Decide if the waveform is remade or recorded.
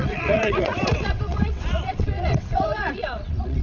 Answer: remade